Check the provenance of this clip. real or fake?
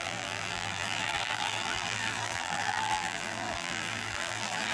fake